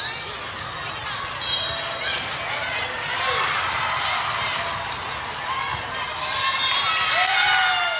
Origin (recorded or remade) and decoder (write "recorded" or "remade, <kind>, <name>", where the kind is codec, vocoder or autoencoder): recorded